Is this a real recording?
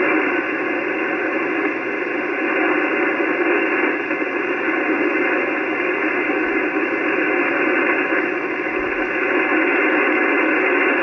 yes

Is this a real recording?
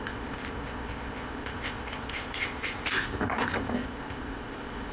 no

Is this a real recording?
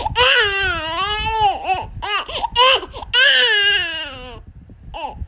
yes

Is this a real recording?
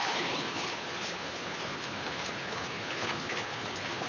no